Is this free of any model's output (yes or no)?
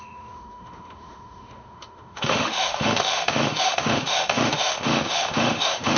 no